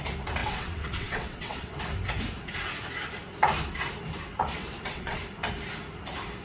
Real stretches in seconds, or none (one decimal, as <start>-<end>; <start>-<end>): 0.0-0.4; 1.8-4.6; 5.2-6.4